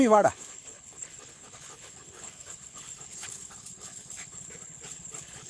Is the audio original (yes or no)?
no